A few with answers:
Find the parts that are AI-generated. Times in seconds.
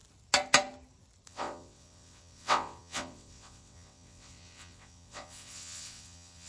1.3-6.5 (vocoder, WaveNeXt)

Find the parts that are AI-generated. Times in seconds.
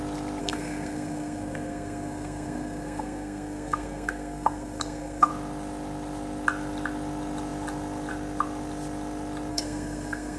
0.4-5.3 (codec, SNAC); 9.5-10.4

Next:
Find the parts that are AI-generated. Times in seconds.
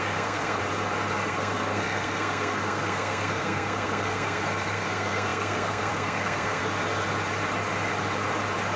0.0-0.6 (codec, SNAC); 1.3-6.6